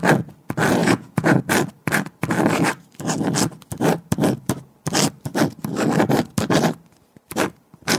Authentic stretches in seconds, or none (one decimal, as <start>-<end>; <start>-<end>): 0.0-0.8; 1.4-8.0